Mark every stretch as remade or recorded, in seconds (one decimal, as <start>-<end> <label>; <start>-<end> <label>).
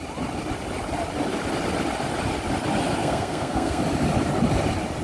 0.0-3.0 recorded; 3.0-3.8 remade; 3.8-5.0 recorded